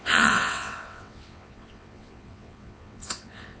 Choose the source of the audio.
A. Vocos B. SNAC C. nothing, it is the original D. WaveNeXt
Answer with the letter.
D